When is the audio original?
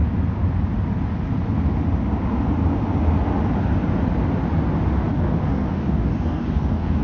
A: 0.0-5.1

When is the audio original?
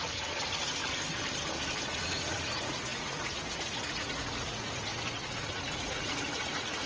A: 0.8-1.9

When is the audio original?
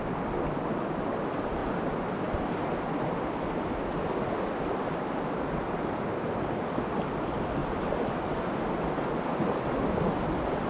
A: 0.0-10.7